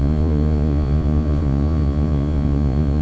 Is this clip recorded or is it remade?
remade